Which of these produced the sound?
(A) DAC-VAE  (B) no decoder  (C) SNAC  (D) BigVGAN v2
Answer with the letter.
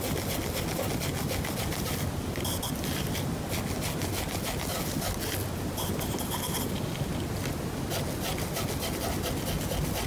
B